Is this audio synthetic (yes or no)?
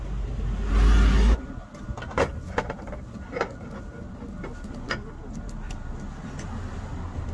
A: no